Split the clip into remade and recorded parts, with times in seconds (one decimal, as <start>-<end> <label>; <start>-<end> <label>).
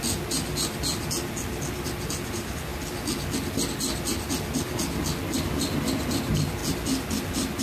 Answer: 0.0-7.6 recorded